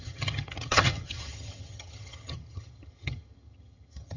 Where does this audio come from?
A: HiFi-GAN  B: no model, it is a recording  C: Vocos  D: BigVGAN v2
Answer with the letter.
A